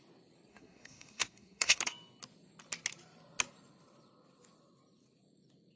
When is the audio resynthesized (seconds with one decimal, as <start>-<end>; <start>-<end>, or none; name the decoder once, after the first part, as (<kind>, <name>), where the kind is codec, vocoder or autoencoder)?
0.5-1.8 (codec, SNAC)